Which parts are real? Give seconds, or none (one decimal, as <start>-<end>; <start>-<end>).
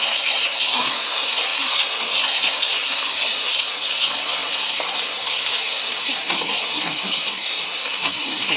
none